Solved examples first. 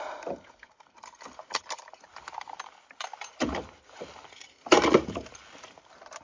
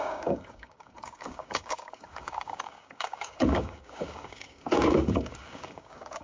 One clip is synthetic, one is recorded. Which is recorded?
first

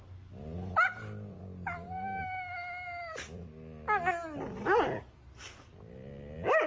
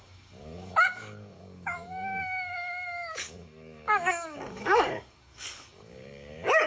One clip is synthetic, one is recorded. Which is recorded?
first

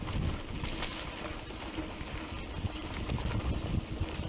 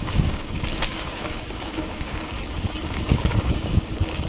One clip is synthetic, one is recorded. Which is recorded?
first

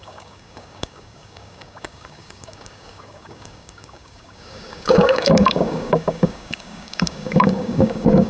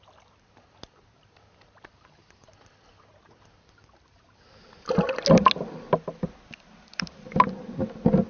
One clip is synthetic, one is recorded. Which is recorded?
second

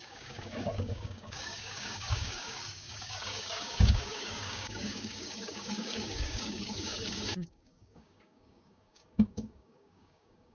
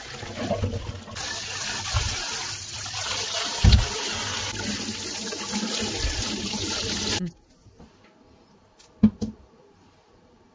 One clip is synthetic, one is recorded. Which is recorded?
second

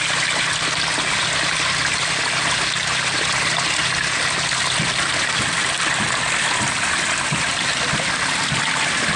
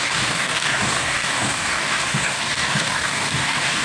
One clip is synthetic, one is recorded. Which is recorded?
first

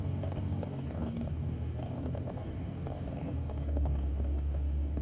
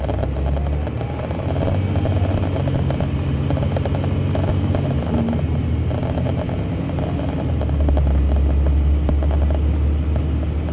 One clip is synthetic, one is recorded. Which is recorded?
second